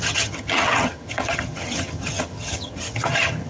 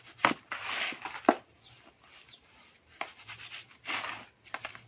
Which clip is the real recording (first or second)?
second